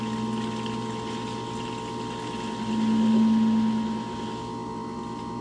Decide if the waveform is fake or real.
real